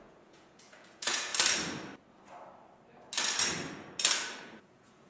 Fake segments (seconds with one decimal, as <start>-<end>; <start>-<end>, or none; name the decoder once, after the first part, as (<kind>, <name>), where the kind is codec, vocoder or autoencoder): 0.0-1.3 (vocoder, Vocos); 4.4-5.1